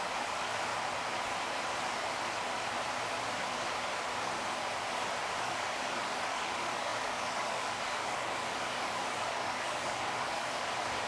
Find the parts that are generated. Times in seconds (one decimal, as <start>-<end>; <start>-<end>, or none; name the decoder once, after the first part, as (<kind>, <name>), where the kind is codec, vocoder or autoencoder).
0.0-0.7 (codec, DAC); 5.4-11.1